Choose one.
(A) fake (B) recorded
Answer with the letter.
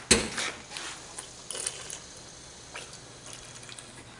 B